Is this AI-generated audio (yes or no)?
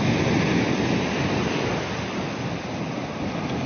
no